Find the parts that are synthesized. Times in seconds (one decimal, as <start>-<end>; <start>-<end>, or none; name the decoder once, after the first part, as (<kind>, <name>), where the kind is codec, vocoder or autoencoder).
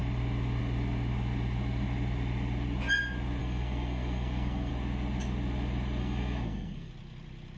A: 3.4-4.7 (codec, SNAC); 6.0-6.9